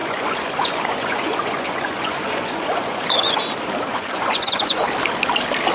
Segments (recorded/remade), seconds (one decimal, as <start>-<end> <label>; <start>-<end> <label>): 0.0-3.4 remade; 3.4-3.9 recorded; 3.9-4.9 remade; 4.9-5.7 recorded